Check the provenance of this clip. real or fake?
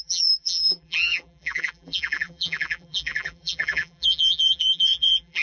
fake